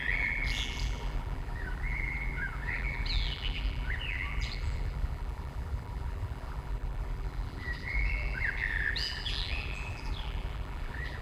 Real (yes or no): no